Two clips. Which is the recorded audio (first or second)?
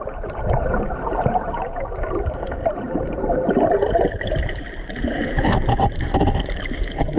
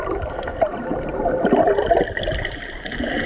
second